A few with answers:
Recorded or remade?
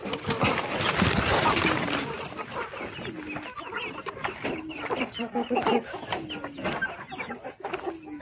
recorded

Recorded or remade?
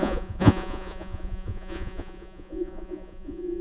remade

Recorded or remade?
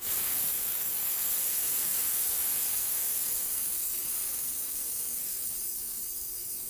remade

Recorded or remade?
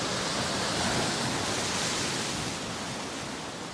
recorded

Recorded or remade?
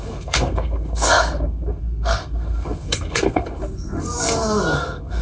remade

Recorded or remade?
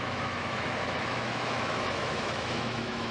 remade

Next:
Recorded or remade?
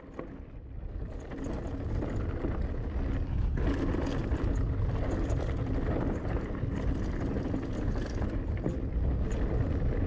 recorded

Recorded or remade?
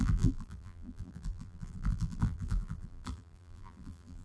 remade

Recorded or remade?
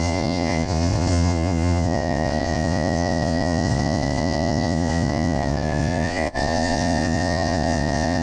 remade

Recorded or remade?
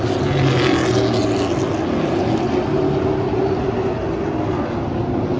recorded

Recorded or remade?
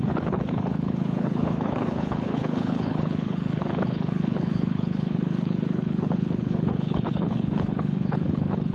remade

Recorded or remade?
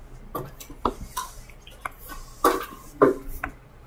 recorded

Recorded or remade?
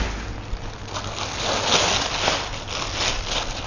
recorded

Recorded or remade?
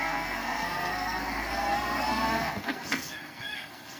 remade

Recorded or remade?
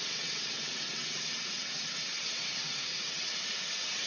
remade